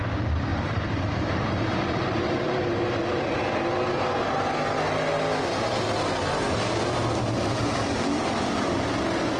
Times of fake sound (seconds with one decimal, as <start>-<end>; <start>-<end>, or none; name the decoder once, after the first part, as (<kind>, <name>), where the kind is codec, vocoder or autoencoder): 0.5-2.6 (vocoder, BigVGAN v2); 7.0-8.8